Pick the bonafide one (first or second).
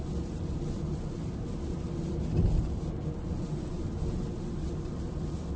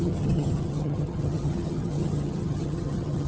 first